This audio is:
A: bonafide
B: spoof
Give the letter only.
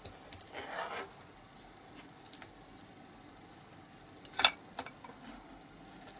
A